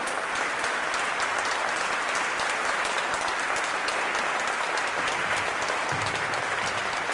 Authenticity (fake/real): real